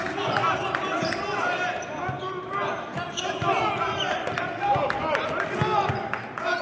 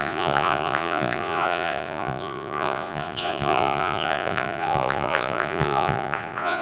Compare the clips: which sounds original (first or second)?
first